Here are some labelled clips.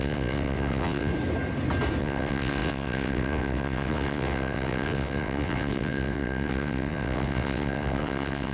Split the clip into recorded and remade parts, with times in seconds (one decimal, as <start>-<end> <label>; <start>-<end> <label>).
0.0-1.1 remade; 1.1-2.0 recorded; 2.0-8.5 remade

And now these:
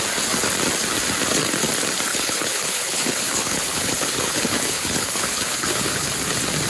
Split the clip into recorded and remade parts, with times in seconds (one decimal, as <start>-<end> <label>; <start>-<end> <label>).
0.0-2.1 recorded; 2.1-6.1 remade; 6.1-6.7 recorded

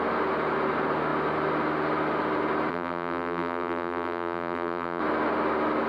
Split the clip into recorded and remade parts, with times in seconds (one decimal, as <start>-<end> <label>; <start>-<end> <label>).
0.0-2.7 recorded; 2.7-5.0 remade; 5.0-5.9 recorded

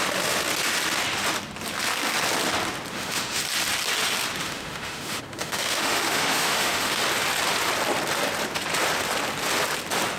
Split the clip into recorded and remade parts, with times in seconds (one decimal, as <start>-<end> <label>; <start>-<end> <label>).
0.0-2.9 recorded; 2.9-3.4 remade; 3.4-4.4 recorded; 4.4-7.0 remade; 7.0-10.2 recorded

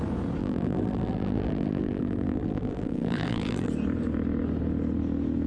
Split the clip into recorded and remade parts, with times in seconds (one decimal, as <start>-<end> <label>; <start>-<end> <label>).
0.0-0.4 recorded; 0.4-3.7 remade; 3.7-5.5 recorded